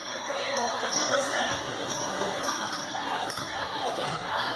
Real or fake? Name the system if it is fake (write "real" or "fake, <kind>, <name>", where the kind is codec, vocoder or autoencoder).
fake, codec, SNAC